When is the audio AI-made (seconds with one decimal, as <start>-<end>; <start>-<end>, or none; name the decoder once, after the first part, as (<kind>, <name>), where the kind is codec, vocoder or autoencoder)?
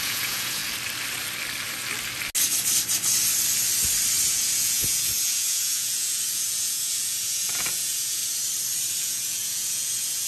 0.0-0.6 (vocoder, Vocos); 4.2-8.2; 9.0-10.3